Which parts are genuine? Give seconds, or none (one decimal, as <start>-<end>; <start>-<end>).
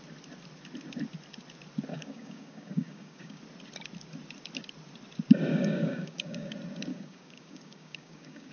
0.0-1.9; 3.4-5.5; 6.5-6.9